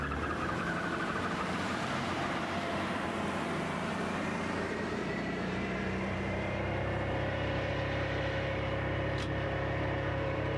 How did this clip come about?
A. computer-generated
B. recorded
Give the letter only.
A